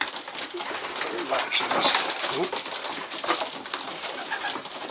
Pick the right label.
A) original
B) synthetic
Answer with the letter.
A